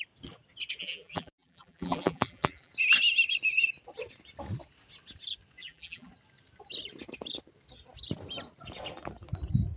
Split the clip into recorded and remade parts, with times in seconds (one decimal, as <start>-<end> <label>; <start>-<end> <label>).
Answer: 0.0-0.8 recorded; 0.8-2.7 remade; 2.7-5.6 recorded; 5.6-6.1 remade; 6.1-9.8 recorded